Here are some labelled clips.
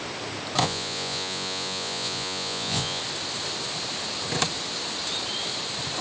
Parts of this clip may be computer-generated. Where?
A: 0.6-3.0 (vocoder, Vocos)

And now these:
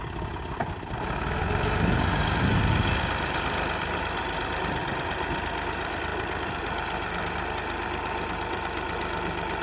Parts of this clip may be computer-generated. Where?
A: none

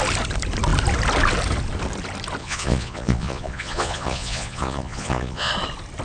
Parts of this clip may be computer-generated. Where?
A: 2.4-5.5 (vocoder, Vocos)